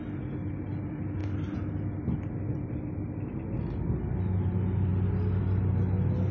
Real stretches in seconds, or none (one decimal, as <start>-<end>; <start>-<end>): 0.0-6.3